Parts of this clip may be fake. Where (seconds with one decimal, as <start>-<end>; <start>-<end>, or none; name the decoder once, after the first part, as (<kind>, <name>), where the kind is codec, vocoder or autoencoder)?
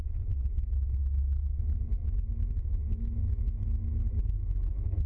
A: 1.0-1.6 (autoencoder, DAC-VAE); 2.0-5.1